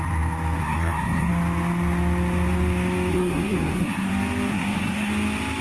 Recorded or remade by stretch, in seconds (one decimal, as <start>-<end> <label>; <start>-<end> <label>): 0.0-0.6 recorded; 0.6-1.3 remade; 1.3-3.1 recorded; 3.1-4.1 remade; 4.1-4.5 recorded; 4.5-5.1 remade; 5.1-5.6 recorded